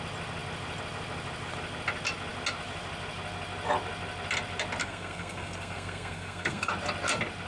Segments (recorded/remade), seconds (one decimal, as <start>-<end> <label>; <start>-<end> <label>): 0.0-4.8 recorded; 4.8-6.7 remade; 6.7-7.5 recorded